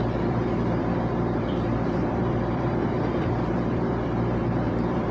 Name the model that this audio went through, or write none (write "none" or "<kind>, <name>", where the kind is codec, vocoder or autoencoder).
vocoder, BigVGAN v2